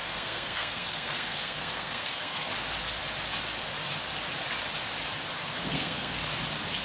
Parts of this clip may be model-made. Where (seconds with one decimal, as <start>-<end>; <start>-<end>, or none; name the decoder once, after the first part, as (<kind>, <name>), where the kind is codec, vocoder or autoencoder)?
0.0-2.5 (codec, SNAC); 5.4-6.1